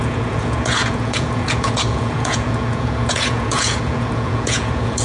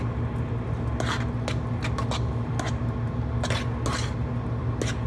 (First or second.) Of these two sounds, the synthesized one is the first